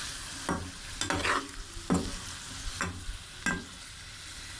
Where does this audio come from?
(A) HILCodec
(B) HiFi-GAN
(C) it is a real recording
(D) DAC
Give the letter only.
C